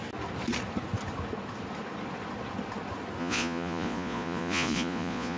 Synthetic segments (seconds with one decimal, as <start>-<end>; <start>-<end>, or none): 3.2-5.4